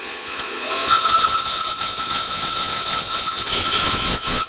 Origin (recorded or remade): remade